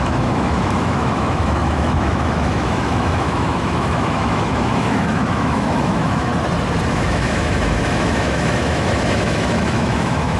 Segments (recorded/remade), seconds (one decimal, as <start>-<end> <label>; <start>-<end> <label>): 0.0-6.3 remade; 6.3-6.9 recorded; 6.9-10.4 remade